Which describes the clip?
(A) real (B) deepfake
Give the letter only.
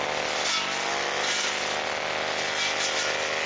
A